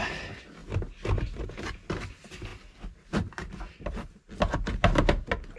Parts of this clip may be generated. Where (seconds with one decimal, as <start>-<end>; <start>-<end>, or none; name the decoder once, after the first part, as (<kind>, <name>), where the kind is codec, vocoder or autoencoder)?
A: none